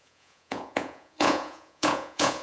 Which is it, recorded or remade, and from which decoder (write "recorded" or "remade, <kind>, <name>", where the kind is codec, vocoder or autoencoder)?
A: remade, vocoder, Vocos